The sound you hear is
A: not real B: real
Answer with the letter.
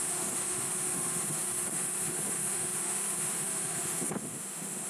A